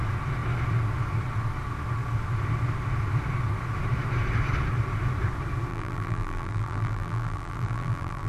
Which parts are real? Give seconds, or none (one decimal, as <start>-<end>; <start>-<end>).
0.0-5.7